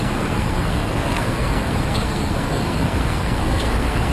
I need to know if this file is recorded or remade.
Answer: remade